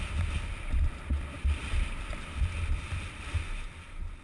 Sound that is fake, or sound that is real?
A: real